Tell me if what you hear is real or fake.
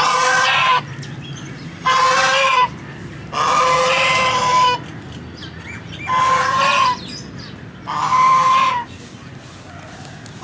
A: real